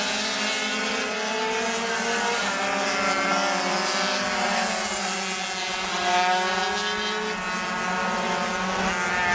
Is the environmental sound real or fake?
real